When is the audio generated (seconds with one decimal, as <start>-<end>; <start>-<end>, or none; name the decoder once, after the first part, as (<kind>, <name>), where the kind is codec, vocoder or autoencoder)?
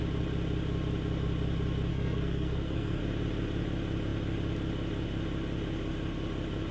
1.9-3.0 (codec, SNAC)